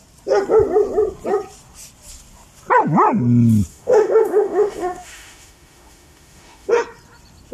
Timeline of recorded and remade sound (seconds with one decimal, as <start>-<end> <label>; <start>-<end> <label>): 0.0-3.7 recorded; 3.7-6.7 remade; 6.7-7.5 recorded